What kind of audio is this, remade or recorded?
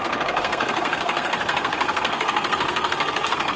remade